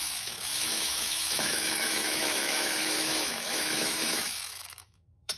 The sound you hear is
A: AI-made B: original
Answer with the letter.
A